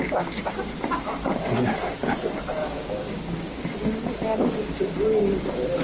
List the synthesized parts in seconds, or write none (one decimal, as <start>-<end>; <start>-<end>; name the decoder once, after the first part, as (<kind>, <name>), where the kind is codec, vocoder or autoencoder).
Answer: 2.6-3.6 (codec, DAC)